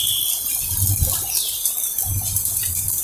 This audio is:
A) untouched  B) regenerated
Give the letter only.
A